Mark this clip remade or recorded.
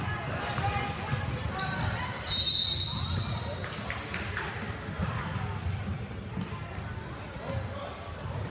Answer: recorded